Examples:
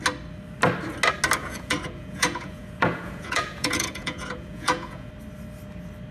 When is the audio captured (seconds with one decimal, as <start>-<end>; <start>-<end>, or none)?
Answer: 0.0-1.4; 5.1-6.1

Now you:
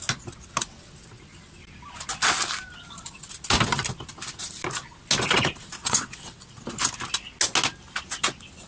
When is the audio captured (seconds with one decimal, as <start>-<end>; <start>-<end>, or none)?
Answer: 0.0-5.8; 6.5-8.7

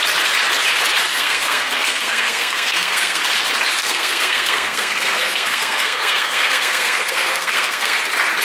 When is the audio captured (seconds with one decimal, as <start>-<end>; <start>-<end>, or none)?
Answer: 0.0-1.1; 3.2-3.8; 8.0-8.4